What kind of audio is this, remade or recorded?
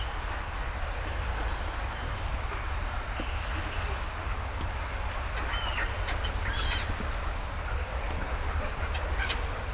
recorded